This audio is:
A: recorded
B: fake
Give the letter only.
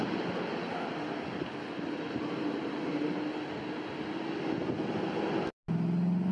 A